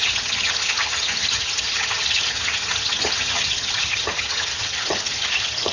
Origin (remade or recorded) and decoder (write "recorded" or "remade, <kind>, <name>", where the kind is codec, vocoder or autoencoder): remade, vocoder, HiFi-GAN